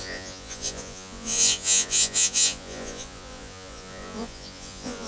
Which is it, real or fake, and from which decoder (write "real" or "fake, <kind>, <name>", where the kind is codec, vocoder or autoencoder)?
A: fake, vocoder, Vocos